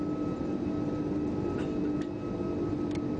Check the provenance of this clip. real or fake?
real